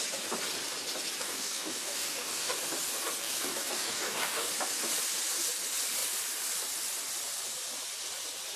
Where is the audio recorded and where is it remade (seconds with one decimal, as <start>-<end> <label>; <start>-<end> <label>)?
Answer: 0.0-1.2 recorded; 1.2-2.6 remade; 2.6-3.2 recorded; 3.2-4.5 remade; 4.5-8.6 recorded